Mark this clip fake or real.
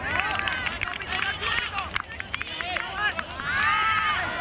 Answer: real